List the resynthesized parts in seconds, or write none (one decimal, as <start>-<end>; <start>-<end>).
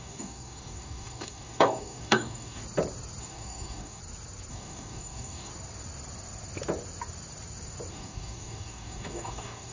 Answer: 0.0-2.6; 3.2-4.0; 4.5-5.5; 7.9-9.7